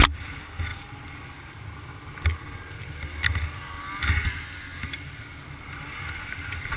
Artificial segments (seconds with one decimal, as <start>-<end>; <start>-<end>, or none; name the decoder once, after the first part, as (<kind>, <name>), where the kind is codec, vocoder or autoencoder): none